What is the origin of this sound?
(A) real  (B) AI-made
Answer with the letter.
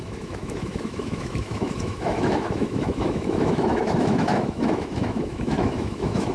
B